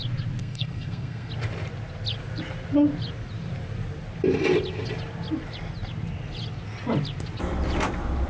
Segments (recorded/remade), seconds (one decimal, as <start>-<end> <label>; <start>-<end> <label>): 0.0-0.4 recorded; 0.4-1.3 remade; 1.3-8.3 recorded

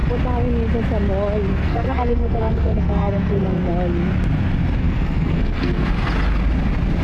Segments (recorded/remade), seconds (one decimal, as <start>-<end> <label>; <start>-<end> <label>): 0.0-1.5 recorded; 1.5-3.7 remade; 3.7-4.8 recorded; 4.8-6.1 remade; 6.1-7.0 recorded

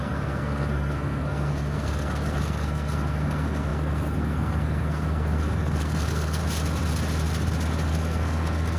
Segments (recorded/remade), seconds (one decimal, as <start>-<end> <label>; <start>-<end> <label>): 0.0-6.4 remade; 6.4-7.9 recorded; 7.9-8.8 remade

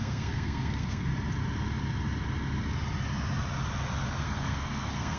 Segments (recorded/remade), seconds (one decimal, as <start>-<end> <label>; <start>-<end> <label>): 0.0-1.1 remade; 1.1-4.2 recorded; 4.2-5.2 remade

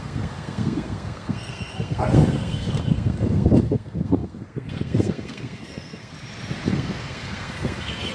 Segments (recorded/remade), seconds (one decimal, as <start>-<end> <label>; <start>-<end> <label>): 0.0-6.1 remade; 6.1-6.7 recorded; 6.7-8.1 remade

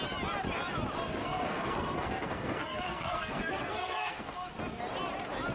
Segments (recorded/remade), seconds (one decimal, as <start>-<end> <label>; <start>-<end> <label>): 0.0-1.2 recorded; 1.2-4.5 remade; 4.5-5.5 recorded